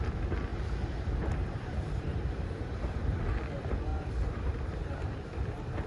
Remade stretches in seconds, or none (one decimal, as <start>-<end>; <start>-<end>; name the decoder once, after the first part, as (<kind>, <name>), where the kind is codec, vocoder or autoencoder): 0.5-3.2 (vocoder, BigVGAN v2); 3.9-4.9